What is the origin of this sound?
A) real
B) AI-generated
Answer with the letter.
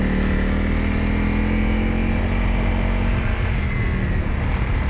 A